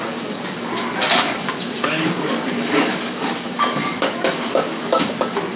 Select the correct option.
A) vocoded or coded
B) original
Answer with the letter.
A